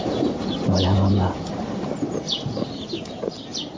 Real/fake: real